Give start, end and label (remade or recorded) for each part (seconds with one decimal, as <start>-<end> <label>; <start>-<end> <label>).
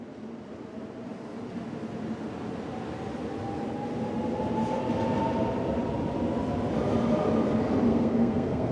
0.0-7.9 recorded; 7.9-8.7 remade